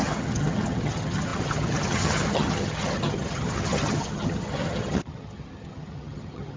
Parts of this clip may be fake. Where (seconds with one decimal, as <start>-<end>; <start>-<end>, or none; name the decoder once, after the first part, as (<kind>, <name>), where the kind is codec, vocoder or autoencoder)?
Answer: 0.0-6.6 (vocoder, HiFi-GAN)